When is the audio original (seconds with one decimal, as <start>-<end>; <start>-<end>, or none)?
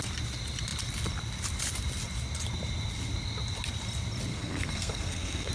0.0-4.3